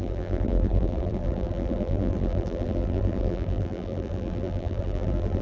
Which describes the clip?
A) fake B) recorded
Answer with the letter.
A